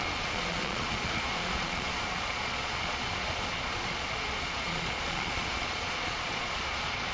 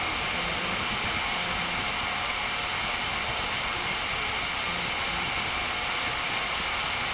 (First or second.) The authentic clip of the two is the second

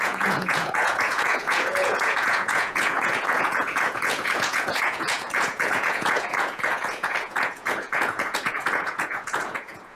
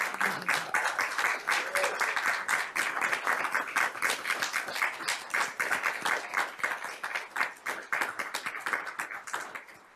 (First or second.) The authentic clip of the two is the second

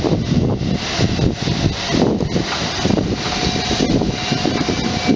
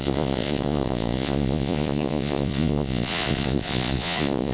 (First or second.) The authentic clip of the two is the first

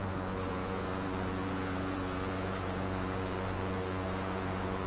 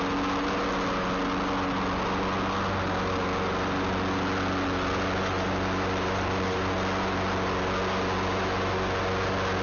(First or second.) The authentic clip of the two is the second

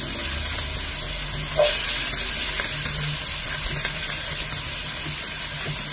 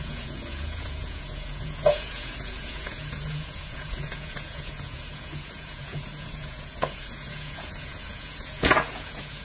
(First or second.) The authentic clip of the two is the first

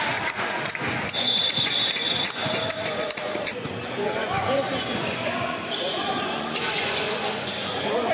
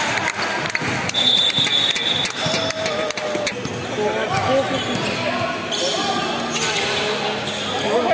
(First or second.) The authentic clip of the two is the second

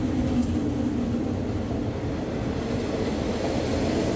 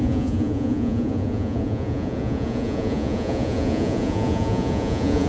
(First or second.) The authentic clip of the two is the first